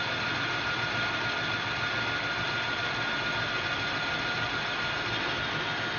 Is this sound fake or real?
real